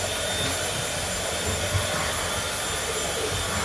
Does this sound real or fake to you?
real